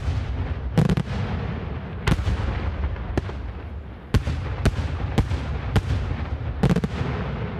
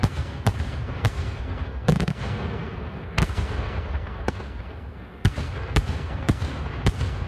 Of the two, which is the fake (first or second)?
second